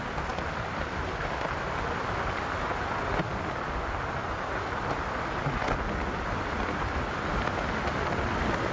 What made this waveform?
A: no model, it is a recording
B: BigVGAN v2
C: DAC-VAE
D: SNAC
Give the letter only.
A